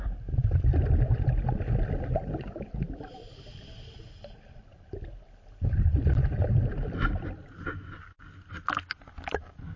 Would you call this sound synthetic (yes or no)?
no